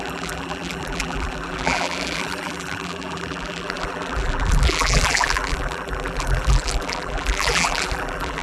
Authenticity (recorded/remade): remade